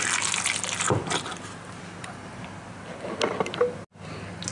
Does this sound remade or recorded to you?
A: recorded